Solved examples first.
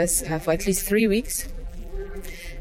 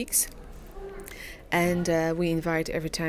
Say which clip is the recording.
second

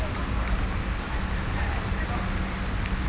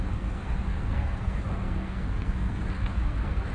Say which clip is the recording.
first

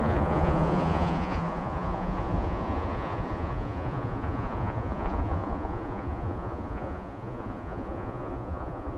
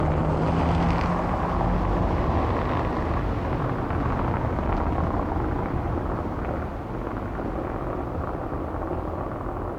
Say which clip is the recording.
second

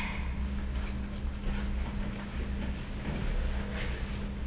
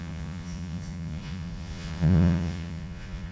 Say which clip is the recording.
first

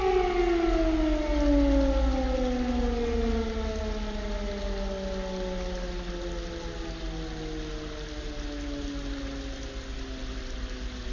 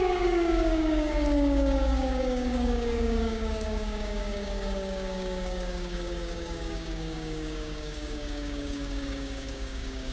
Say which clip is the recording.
first